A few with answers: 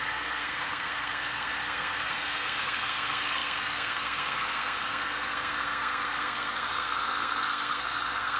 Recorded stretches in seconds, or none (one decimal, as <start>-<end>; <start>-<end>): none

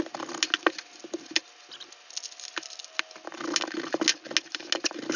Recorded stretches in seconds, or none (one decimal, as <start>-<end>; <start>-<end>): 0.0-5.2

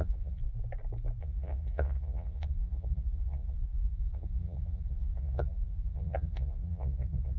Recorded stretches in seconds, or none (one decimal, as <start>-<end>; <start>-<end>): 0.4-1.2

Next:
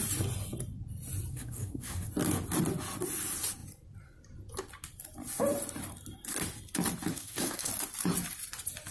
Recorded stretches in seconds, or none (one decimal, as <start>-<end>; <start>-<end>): 0.0-1.3; 2.1-7.1; 7.7-8.9

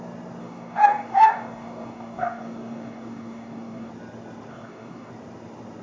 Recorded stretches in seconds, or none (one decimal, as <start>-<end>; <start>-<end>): 0.0-0.4; 3.9-4.5; 5.1-5.8

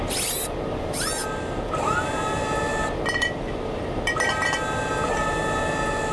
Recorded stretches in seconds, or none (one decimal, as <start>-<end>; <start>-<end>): 0.0-6.1